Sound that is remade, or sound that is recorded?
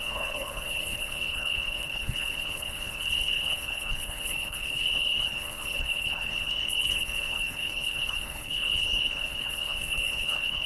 remade